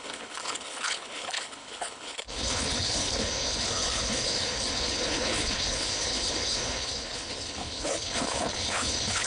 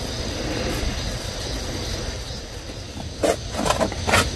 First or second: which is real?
second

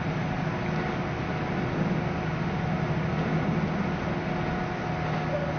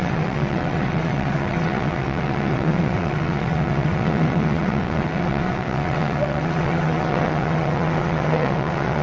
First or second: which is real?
first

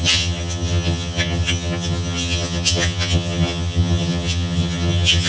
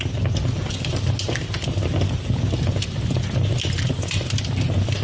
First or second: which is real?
second